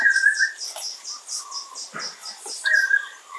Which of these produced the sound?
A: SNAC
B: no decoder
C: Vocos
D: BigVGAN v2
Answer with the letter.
B